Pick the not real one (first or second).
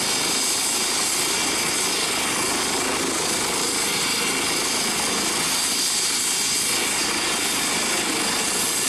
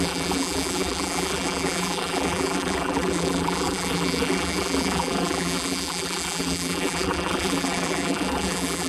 second